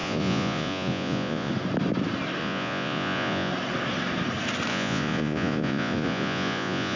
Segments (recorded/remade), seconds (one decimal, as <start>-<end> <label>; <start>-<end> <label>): 0.0-1.5 remade; 1.5-2.4 recorded; 2.4-3.5 remade; 3.5-4.7 recorded; 4.7-7.0 remade